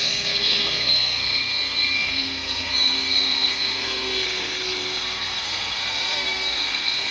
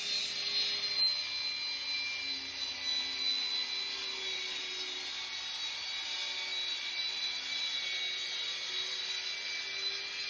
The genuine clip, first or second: second